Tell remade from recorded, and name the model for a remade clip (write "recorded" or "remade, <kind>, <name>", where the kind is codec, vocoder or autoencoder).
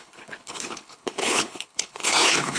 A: remade, codec, HILCodec